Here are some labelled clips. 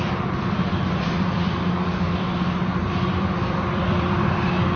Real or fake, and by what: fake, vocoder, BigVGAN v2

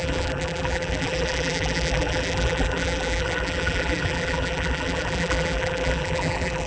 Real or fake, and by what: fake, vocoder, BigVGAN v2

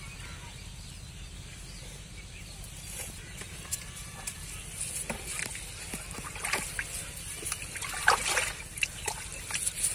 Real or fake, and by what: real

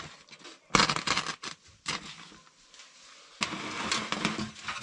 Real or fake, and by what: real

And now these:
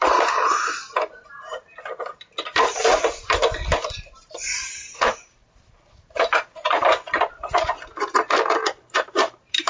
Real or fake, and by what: fake, vocoder, BigVGAN v2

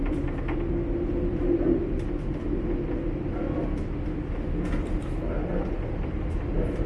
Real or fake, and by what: real